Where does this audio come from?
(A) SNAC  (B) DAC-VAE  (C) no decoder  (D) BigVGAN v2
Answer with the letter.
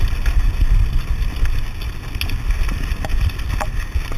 C